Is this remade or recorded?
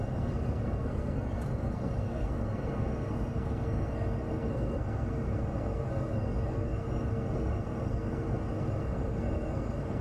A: remade